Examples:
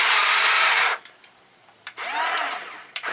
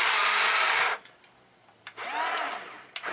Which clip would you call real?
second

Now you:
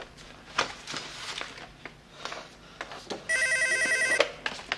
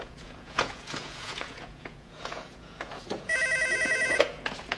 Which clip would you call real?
first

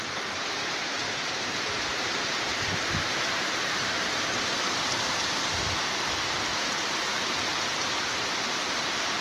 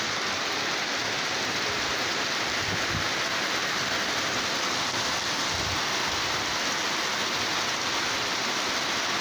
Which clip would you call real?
second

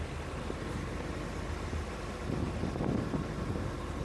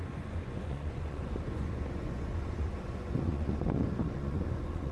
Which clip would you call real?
first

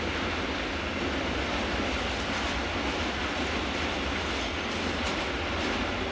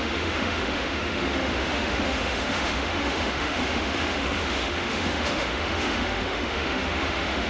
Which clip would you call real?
first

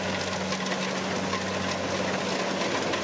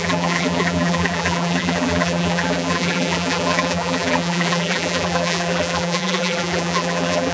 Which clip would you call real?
first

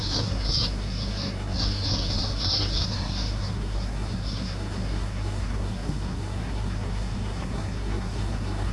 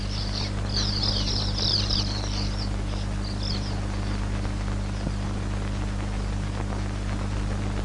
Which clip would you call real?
second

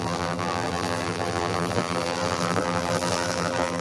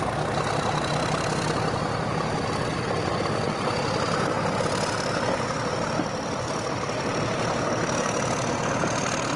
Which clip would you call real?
second